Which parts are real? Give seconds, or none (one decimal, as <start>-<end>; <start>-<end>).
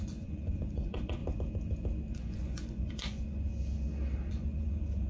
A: 1.2-2.1; 3.5-4.3